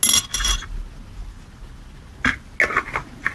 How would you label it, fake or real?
real